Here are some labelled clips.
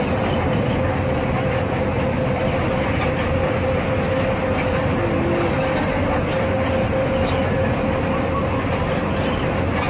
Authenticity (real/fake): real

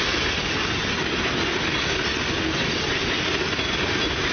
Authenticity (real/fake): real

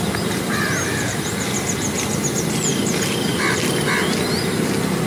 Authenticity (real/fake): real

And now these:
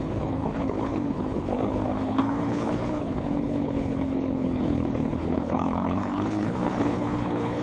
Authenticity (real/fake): fake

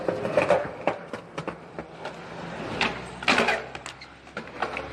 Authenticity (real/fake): real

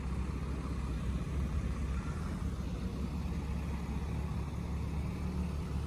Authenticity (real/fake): real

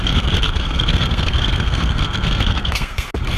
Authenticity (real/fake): fake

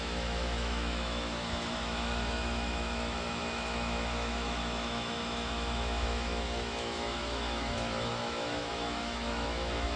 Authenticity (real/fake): fake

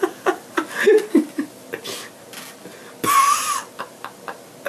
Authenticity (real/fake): real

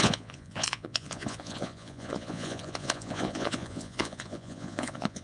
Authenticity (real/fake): fake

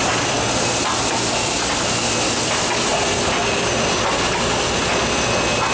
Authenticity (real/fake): real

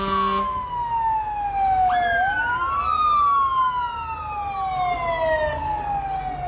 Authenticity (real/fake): real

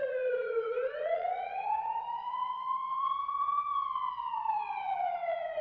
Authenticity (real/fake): fake